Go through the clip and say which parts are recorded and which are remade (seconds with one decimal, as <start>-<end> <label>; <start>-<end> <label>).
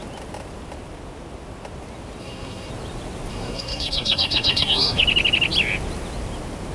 0.0-2.2 recorded; 2.2-2.7 remade; 2.7-3.3 recorded; 3.3-5.0 remade; 5.0-6.7 recorded